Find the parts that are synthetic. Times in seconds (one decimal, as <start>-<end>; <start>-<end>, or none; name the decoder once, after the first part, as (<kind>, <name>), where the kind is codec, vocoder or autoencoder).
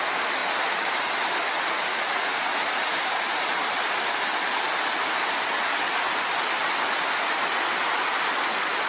0.4-1.0 (vocoder, BigVGAN v2)